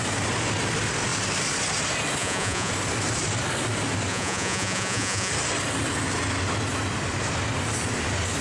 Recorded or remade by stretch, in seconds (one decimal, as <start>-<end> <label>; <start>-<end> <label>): 0.0-2.2 recorded; 2.2-2.7 remade; 2.7-4.1 recorded; 4.1-5.3 remade; 5.3-8.4 recorded